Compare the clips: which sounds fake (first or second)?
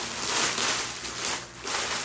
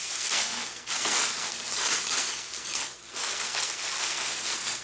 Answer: second